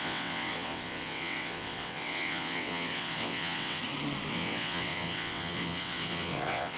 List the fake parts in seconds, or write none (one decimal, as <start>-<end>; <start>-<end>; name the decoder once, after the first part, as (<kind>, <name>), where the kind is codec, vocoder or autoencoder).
0.0-3.8 (vocoder, WaveNeXt); 4.3-6.8